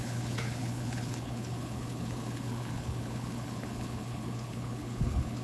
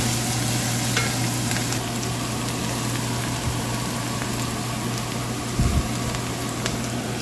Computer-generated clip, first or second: first